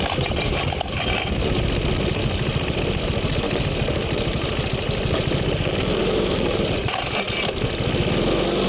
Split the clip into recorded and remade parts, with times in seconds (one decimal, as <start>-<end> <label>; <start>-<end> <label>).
0.0-6.0 recorded; 6.0-6.9 remade; 6.9-8.7 recorded